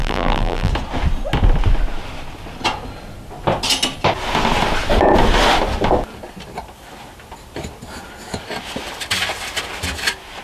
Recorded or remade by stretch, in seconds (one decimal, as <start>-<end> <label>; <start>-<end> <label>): 0.0-0.7 remade; 0.7-10.4 recorded